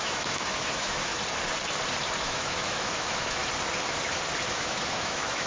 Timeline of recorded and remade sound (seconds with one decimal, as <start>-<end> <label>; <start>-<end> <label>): 0.0-1.1 remade; 1.1-2.2 recorded; 2.2-3.4 remade; 3.4-4.5 recorded; 4.5-5.5 remade